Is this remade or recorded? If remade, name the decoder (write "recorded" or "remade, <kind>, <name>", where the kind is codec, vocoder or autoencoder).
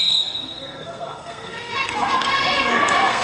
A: remade, codec, SNAC